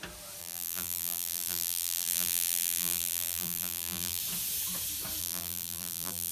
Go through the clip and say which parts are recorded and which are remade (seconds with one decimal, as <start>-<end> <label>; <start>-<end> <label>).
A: 0.0-0.4 recorded; 0.4-4.2 remade; 4.2-5.2 recorded; 5.2-6.3 remade